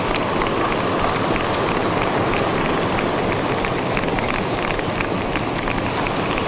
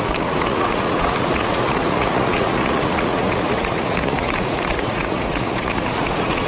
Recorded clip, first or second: first